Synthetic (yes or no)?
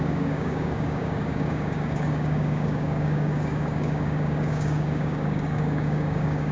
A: yes